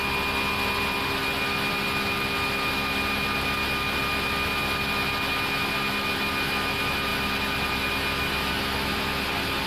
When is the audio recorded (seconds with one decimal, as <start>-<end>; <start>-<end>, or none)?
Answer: 0.0-9.7